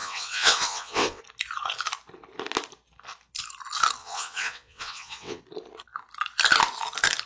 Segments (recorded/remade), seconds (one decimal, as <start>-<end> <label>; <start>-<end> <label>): 0.0-1.2 remade; 1.2-4.0 recorded; 4.0-5.4 remade; 5.4-7.3 recorded

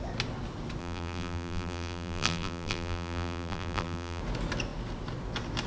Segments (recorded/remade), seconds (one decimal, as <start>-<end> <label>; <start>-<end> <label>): 0.0-0.8 recorded; 0.8-4.2 remade; 4.2-5.7 recorded

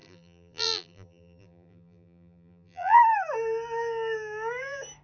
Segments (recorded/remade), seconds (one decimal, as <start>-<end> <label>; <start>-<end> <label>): 0.0-3.0 remade; 3.0-5.0 recorded

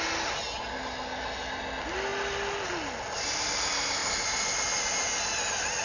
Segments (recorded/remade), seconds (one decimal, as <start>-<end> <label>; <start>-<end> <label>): 0.0-5.8 recorded

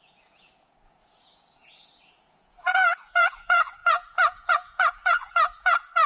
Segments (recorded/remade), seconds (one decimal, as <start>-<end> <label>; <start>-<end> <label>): 0.0-6.1 remade